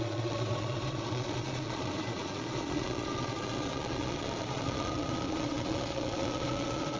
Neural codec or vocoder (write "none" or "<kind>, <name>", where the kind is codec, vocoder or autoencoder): vocoder, Vocos